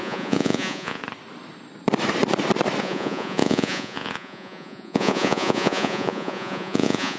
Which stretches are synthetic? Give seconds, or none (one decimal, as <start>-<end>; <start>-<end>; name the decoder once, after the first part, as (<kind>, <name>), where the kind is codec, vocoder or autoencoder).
0.0-1.0 (vocoder, Vocos); 2.8-7.2

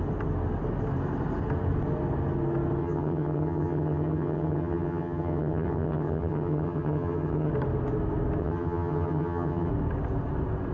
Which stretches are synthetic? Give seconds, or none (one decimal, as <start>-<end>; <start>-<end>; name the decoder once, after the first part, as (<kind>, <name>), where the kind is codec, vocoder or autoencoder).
2.8-7.5 (vocoder, HiFi-GAN); 8.4-9.7